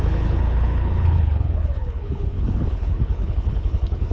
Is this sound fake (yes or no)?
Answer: yes